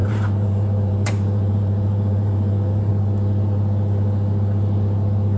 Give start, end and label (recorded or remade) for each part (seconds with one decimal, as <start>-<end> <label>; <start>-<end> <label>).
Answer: 0.0-2.9 remade; 2.9-5.4 recorded